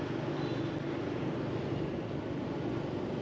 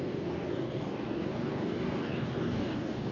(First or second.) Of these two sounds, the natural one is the first